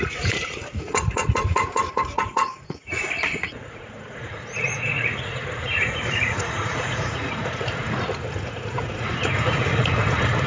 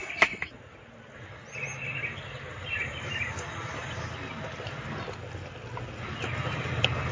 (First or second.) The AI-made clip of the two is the first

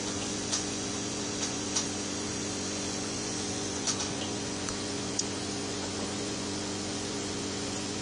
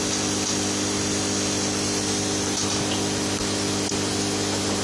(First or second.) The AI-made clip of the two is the first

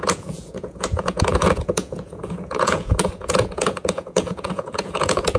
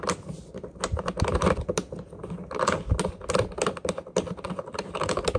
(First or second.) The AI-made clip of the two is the first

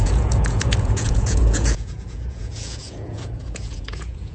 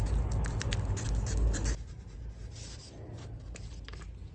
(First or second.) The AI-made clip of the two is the first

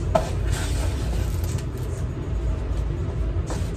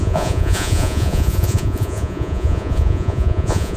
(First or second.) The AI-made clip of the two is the second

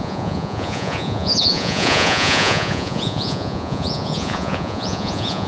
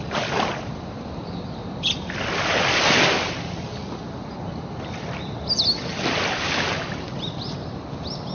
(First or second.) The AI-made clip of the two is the first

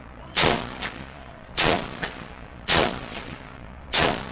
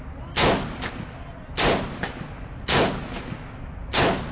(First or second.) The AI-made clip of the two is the first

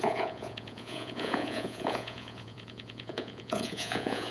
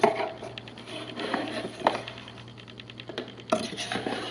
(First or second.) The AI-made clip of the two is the first